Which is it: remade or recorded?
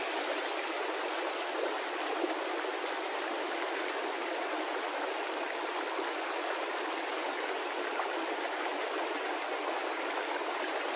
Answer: recorded